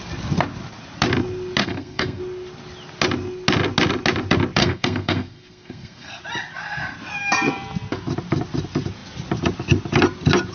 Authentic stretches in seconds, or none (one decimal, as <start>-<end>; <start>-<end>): 0.0-1.6; 2.2-4.6; 6.2-10.5